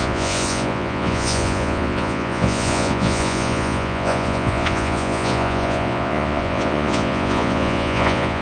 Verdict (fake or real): fake